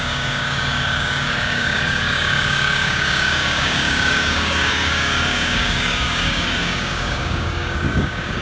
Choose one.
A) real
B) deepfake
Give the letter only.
B